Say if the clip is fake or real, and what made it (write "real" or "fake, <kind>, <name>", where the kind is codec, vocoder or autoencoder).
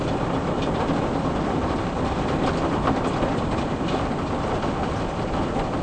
real